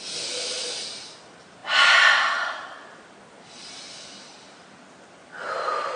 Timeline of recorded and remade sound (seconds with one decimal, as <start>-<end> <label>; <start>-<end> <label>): 0.0-6.0 recorded